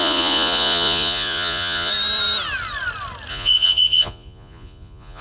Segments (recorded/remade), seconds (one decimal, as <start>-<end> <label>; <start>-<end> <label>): 0.0-1.9 remade; 1.9-3.3 recorded; 3.3-5.2 remade